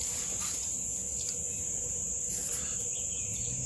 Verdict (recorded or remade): recorded